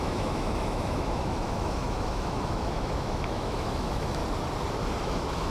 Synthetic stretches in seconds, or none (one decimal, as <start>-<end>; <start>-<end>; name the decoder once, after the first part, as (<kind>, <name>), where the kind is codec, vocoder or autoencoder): 0.0-4.2 (autoencoder, DAC-VAE); 5.0-5.5